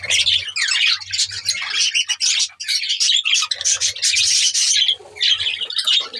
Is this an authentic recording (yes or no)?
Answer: yes